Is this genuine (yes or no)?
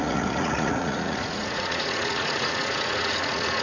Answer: no